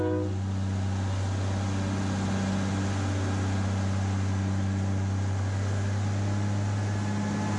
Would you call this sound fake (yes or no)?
no